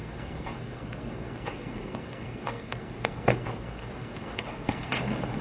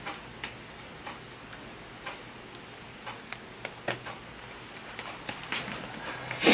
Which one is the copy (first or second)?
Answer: first